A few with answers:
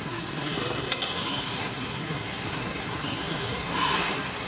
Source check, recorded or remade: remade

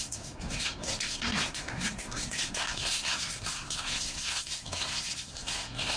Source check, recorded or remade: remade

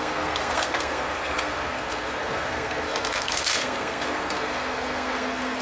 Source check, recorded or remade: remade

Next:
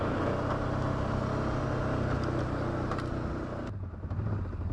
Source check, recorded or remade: recorded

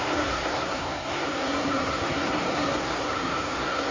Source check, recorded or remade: remade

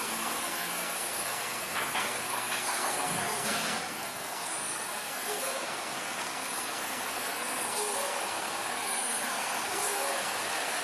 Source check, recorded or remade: remade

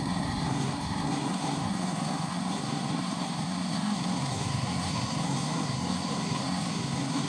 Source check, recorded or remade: remade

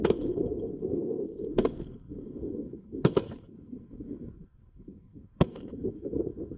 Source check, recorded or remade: remade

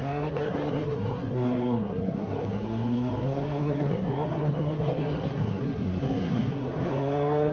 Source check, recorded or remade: remade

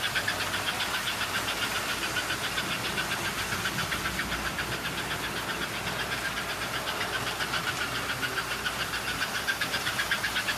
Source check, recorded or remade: recorded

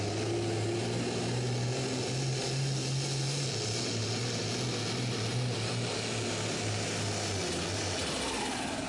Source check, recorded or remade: recorded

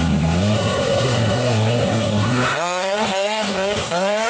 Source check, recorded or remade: remade